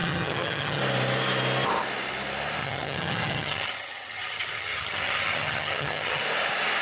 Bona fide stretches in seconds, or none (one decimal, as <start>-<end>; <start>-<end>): 0.8-2.6; 6.2-6.8